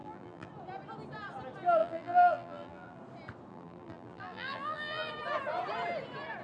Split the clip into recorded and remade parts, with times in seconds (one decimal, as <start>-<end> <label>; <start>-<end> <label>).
0.0-0.5 remade; 0.5-1.8 recorded; 1.8-3.0 remade; 3.0-3.5 recorded; 3.5-5.1 remade; 5.1-6.4 recorded